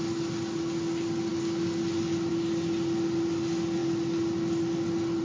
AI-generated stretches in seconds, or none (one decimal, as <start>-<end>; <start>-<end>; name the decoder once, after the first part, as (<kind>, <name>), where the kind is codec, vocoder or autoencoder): none